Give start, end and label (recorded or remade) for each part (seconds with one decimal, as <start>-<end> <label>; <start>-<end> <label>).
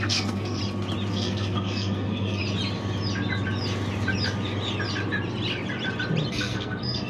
0.0-0.6 remade; 0.6-1.1 recorded; 1.1-2.4 remade; 2.4-6.3 recorded; 6.3-7.1 remade